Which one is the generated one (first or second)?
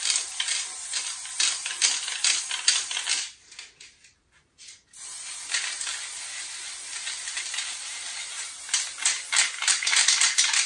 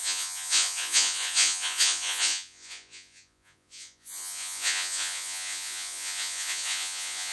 second